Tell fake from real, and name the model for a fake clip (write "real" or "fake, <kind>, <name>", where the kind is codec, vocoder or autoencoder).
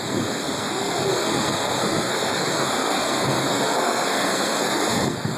fake, codec, SNAC